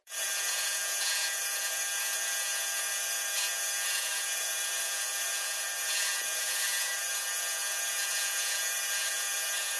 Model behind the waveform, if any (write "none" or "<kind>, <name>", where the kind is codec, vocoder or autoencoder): vocoder, Vocos